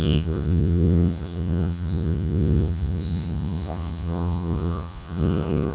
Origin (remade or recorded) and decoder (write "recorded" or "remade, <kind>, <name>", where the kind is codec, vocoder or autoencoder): remade, vocoder, Vocos